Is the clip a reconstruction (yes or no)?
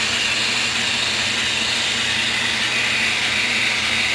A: no